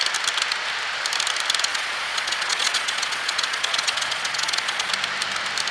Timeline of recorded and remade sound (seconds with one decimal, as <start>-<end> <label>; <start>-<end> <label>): 0.0-1.7 recorded; 1.7-4.9 remade; 4.9-5.7 recorded